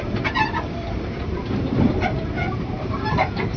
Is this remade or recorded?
remade